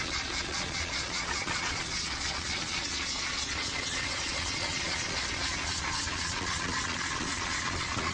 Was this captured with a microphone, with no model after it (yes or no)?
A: no